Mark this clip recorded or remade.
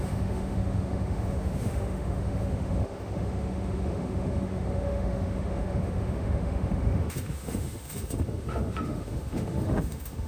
remade